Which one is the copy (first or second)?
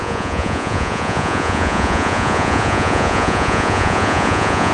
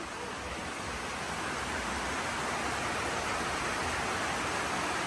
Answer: first